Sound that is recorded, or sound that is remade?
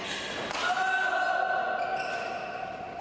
recorded